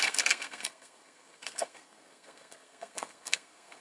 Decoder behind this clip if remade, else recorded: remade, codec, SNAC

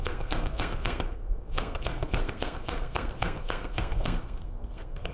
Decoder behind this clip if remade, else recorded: remade, codec, SNAC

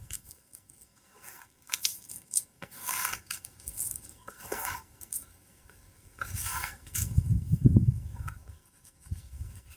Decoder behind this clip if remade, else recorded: remade, codec, SNAC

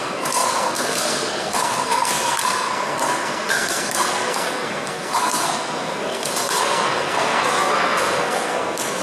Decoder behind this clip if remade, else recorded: remade, codec, SNAC